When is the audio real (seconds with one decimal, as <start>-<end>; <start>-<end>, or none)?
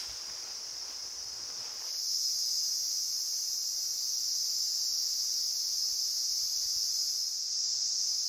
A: 0.0-5.8; 6.8-8.3